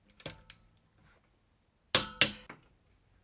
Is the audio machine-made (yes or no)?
no